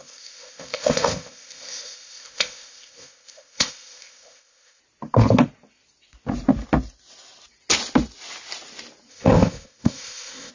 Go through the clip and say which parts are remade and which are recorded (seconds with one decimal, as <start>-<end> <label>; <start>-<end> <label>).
0.0-4.8 remade; 4.8-9.1 recorded; 9.1-10.5 remade

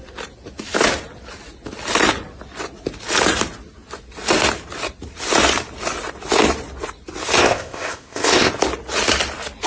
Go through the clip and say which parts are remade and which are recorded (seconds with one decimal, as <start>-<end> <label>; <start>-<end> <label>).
0.0-7.4 recorded; 7.4-8.5 remade; 8.5-9.7 recorded